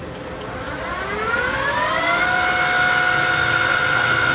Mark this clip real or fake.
real